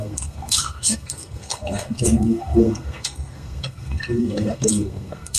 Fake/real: fake